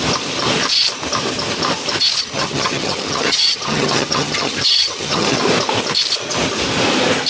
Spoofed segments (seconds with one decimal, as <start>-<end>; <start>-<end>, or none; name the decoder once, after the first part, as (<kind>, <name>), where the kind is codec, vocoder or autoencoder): 2.2-5.4 (vocoder, HiFi-GAN)